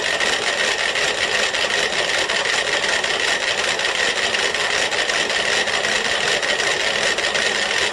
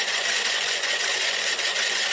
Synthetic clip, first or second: second